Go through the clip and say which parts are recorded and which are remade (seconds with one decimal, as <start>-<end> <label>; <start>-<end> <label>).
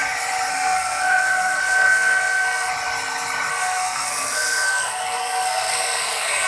0.0-0.5 recorded; 0.5-2.7 remade; 2.7-3.5 recorded; 3.5-6.5 remade